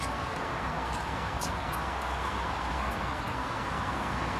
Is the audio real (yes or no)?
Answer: no